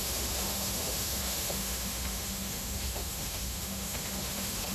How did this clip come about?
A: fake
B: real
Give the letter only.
A